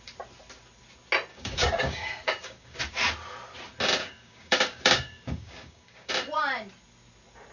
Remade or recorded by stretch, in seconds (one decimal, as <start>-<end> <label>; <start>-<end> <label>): 0.0-1.3 recorded; 1.3-2.8 remade; 2.8-4.0 recorded; 4.0-6.1 remade; 6.1-7.5 recorded